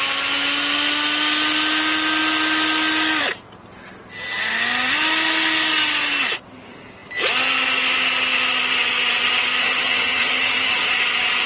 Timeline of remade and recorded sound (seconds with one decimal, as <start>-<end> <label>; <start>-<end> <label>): 0.0-9.6 recorded; 9.6-10.9 remade; 10.9-11.5 recorded